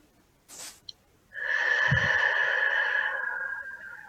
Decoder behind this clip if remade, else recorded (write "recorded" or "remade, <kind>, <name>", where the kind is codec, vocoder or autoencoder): recorded